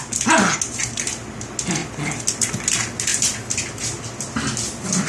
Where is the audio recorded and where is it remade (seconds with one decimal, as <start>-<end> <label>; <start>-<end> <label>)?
0.0-5.1 recorded